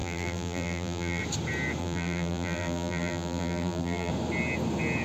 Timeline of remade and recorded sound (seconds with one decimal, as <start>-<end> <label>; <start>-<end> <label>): 0.0-1.2 remade; 1.2-1.8 recorded; 1.8-4.1 remade; 4.1-5.0 recorded